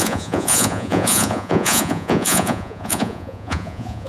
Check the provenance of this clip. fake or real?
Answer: fake